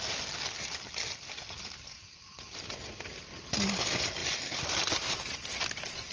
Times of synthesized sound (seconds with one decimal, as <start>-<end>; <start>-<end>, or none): none